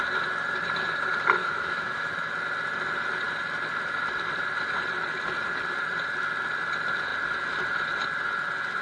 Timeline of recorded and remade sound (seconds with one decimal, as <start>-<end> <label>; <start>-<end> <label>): 0.0-1.4 recorded; 1.4-2.3 remade; 2.3-8.8 recorded